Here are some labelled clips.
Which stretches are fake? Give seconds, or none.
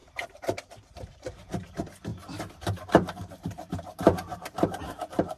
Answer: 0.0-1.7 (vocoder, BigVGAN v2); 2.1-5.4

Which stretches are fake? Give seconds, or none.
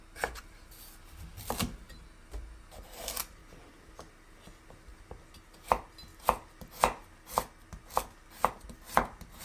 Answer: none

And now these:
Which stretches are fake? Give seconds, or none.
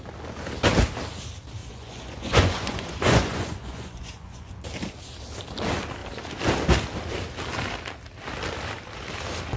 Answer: 1.6-4.5 (vocoder, Vocos)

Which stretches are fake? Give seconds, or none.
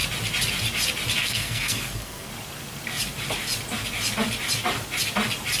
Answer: 1.2-2.3 (codec, SNAC)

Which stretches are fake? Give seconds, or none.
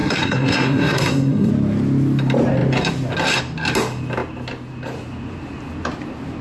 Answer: 0.0-1.5 (codec, SNAC)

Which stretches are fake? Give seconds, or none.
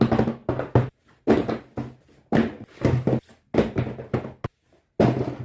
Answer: none